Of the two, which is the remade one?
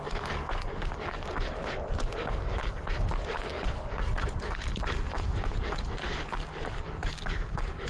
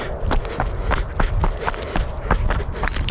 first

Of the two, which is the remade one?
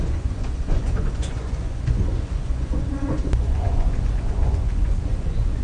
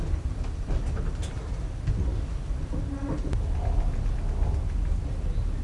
first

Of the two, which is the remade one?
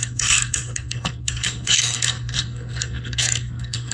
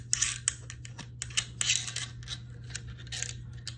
first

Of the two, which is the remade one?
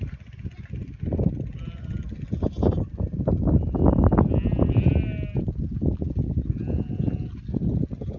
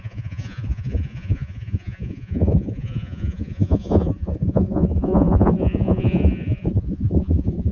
second